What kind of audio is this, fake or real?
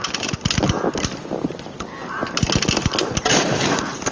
real